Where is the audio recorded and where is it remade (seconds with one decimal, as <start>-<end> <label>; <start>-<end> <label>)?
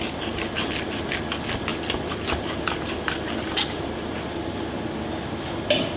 0.0-6.0 recorded